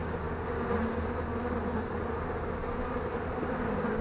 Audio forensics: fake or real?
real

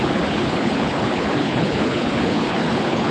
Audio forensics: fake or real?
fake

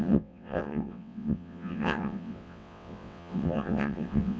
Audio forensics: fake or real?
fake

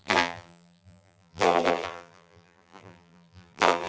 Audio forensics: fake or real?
fake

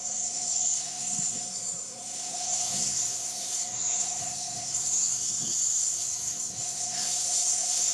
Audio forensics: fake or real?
fake